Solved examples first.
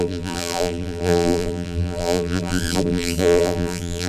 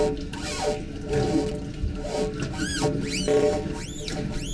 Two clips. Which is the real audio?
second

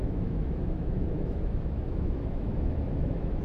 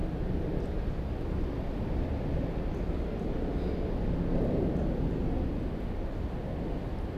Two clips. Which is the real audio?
second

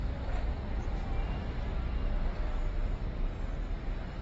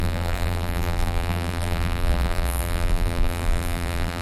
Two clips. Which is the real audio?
first